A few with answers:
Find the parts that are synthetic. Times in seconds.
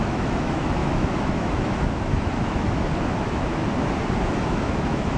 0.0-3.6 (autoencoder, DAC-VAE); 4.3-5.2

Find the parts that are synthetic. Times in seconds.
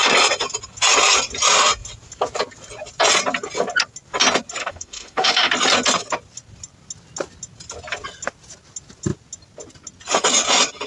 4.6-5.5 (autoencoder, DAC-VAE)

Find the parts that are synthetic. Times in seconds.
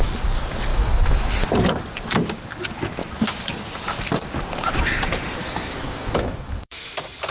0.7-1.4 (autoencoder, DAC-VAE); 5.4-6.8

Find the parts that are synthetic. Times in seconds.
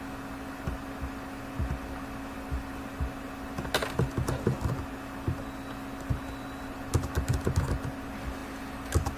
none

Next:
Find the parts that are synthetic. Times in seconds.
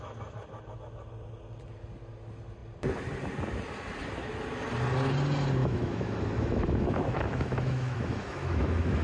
5.6-9.0 (autoencoder, DAC-VAE)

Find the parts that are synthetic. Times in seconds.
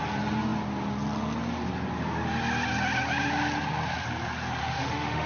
4.6-5.3 (autoencoder, DAC-VAE)